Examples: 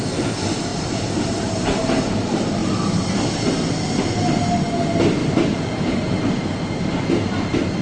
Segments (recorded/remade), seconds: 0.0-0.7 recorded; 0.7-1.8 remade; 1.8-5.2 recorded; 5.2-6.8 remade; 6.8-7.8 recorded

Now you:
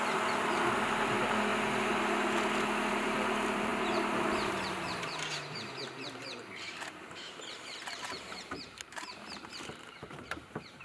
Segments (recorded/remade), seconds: 0.0-1.5 remade; 1.5-2.9 recorded; 2.9-10.8 remade